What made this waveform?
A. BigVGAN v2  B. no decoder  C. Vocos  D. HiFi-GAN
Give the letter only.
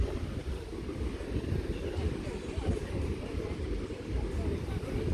A